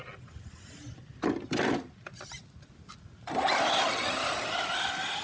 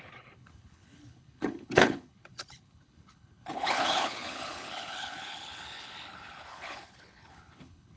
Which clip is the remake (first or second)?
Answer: second